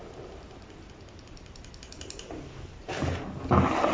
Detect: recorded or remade recorded